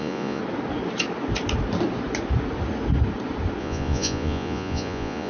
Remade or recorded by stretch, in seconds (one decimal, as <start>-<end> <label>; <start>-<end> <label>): 0.0-0.4 remade; 0.4-3.6 recorded; 3.6-5.3 remade